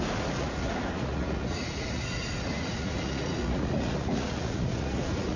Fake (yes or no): yes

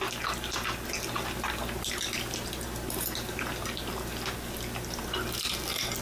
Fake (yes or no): no